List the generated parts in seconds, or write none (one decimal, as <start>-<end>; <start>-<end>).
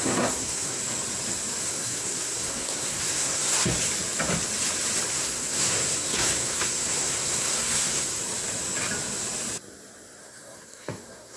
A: 0.0-0.8; 1.6-3.7; 5.1-8.2; 10.2-11.4